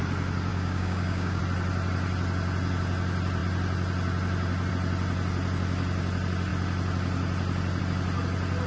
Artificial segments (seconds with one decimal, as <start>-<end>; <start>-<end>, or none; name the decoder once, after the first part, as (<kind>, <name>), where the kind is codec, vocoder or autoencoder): 0.5-1.4 (codec, DAC)